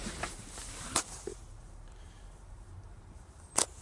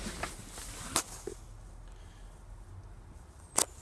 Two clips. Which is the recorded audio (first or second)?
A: second